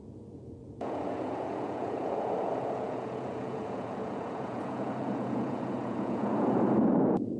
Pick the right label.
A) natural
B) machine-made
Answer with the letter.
B